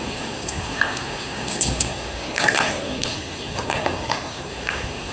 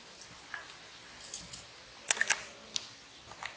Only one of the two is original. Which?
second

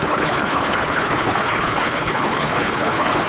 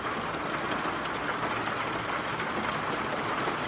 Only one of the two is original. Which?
second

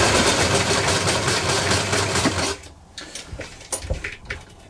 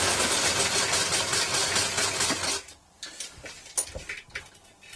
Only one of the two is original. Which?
second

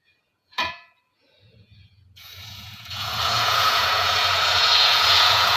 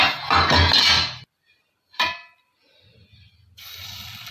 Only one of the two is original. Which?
second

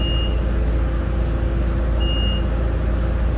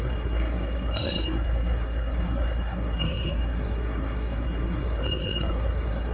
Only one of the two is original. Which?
first